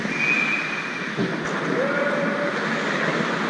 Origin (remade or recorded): recorded